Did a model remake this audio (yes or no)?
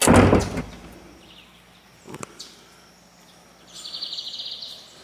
no